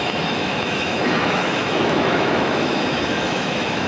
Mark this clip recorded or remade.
remade